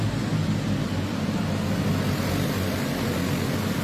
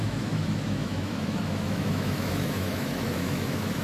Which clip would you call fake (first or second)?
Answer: second